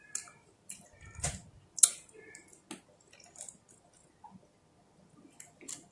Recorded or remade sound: recorded